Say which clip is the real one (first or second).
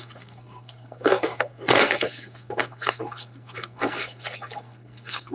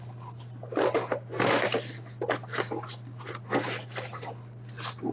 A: second